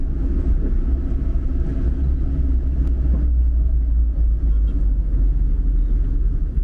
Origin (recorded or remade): recorded